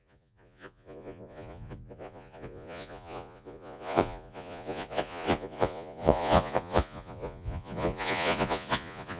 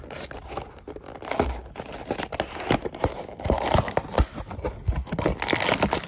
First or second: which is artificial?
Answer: first